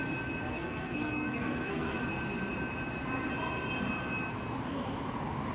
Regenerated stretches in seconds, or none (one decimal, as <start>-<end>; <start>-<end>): 0.5-2.0